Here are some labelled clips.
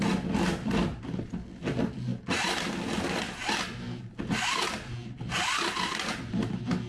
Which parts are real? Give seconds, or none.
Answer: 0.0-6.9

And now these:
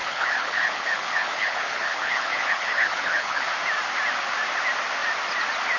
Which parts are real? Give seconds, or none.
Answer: 3.5-5.8